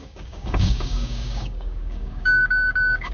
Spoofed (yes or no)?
yes